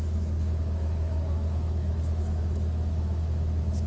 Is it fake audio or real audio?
fake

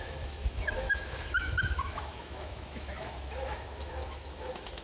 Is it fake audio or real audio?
fake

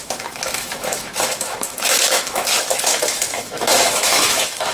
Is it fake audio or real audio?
fake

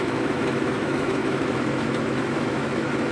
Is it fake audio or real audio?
fake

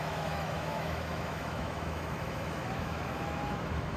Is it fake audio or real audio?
fake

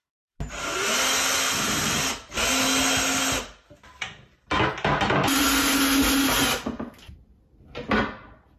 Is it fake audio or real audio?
real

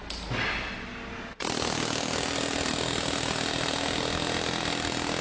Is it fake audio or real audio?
real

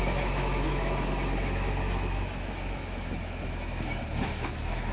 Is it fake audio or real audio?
fake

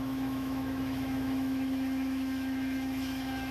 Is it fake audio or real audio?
fake